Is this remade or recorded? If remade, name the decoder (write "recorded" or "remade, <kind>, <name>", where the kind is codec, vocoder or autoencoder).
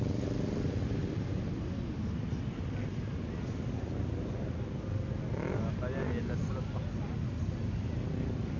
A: recorded